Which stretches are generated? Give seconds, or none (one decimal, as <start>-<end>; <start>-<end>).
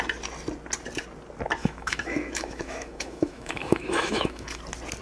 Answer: 1.6-4.6